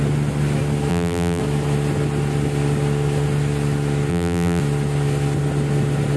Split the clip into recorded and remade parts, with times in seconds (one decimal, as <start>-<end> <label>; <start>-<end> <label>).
0.0-0.9 recorded; 0.9-1.4 remade; 1.4-4.1 recorded; 4.1-4.6 remade; 4.6-6.2 recorded